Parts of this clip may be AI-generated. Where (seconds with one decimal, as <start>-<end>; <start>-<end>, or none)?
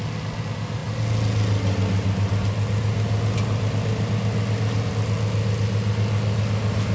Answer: none